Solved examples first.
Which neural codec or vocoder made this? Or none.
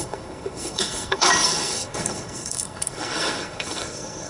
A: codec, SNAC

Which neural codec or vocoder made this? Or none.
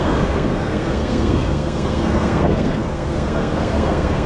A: codec, SNAC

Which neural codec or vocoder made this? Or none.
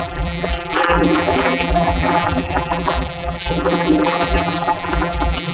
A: vocoder, BigVGAN v2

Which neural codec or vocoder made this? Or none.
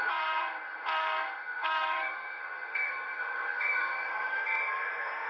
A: codec, SNAC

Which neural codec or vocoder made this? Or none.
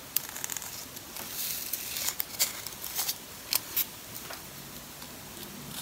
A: none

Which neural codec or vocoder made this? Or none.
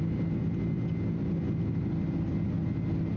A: none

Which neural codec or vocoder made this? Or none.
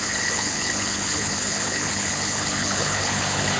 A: codec, HILCodec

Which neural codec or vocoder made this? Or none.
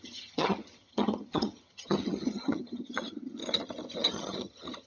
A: vocoder, HiFi-GAN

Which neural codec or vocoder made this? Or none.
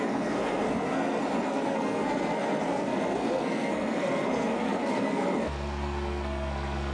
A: codec, SNAC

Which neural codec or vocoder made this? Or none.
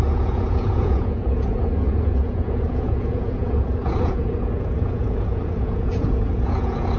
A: vocoder, Vocos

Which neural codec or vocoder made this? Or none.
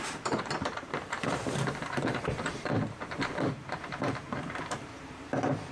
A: vocoder, BigVGAN v2